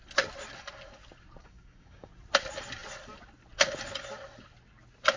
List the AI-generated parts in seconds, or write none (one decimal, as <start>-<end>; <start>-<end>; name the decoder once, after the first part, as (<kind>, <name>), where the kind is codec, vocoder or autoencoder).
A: 1.4-2.1 (codec, DAC)